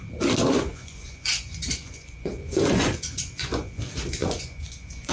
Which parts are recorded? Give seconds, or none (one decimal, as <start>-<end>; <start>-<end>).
0.0-0.7; 3.8-4.2